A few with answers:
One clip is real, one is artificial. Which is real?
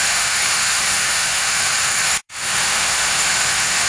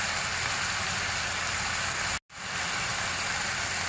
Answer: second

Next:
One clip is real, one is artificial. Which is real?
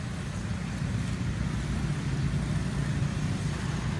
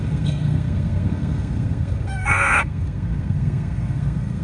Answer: first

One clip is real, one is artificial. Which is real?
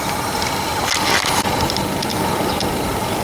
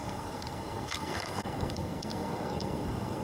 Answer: first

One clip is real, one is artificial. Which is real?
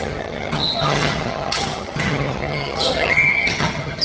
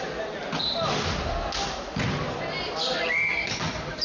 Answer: second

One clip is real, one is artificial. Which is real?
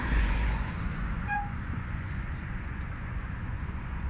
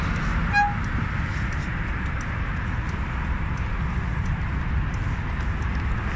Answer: second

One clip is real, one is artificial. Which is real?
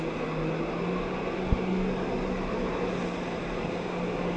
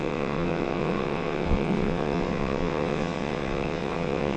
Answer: first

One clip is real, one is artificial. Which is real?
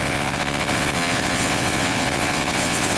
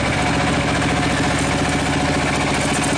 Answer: second